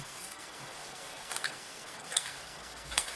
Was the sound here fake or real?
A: fake